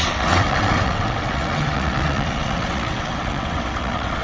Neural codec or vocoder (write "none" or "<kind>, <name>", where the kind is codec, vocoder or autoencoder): vocoder, WaveNeXt